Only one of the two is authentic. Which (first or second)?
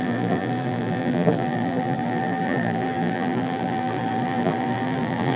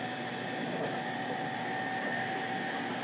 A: second